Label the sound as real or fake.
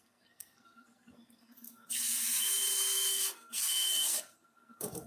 fake